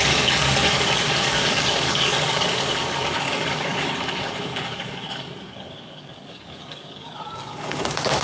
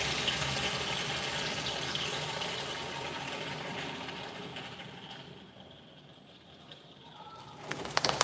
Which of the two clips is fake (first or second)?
first